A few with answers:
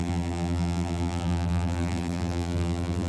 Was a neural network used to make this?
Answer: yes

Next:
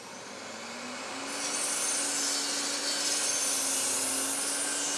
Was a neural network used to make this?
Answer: no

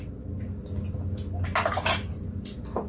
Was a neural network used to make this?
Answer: no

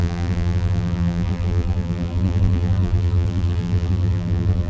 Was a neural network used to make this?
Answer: yes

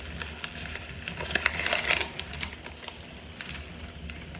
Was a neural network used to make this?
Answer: no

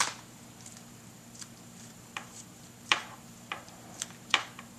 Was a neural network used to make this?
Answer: yes